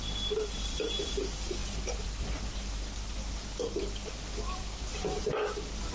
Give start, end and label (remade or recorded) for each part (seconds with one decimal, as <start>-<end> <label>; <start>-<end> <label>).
0.0-3.2 remade; 3.2-3.8 recorded; 3.8-5.9 remade